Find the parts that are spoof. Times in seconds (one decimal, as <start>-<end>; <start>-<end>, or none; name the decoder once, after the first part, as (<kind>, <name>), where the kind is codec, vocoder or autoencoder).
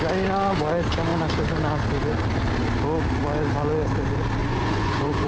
4.4-5.3 (vocoder, Vocos)